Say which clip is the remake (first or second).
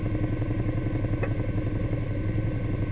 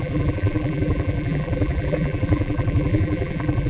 second